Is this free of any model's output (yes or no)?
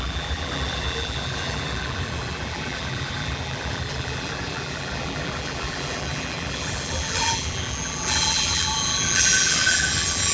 no